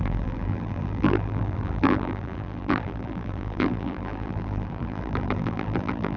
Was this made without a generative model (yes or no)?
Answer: no